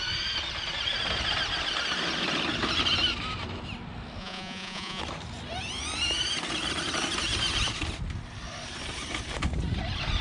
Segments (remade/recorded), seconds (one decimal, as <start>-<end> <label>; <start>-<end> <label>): 0.0-4.2 recorded; 4.2-5.0 remade; 5.0-10.2 recorded